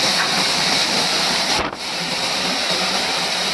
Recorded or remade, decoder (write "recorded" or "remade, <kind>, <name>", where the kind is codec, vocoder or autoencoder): remade, vocoder, BigVGAN v2